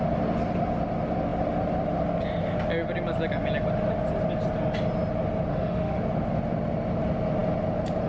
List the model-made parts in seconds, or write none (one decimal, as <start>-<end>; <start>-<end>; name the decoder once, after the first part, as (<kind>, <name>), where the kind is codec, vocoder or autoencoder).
5.5-6.0 (autoencoder, DAC-VAE)